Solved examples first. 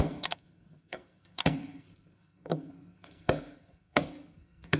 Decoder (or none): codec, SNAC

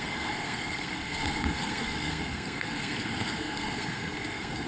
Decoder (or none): codec, SNAC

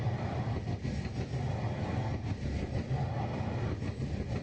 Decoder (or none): none